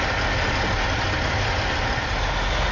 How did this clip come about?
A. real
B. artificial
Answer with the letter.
A